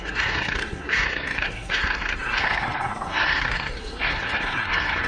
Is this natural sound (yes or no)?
no